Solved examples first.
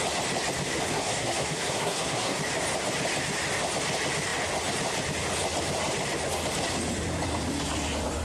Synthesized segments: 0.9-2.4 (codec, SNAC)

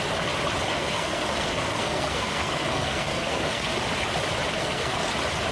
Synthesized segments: 0.7-3.7 (codec, SNAC); 4.6-5.1

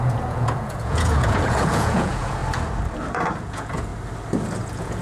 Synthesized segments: 0.0-2.4 (vocoder, Vocos); 3.3-3.9; 4.6-5.0

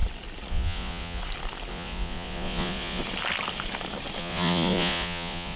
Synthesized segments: 0.5-1.2 (vocoder, Vocos); 1.7-3.0; 4.2-5.6